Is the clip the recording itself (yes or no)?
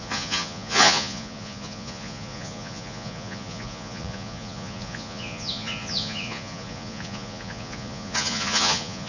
no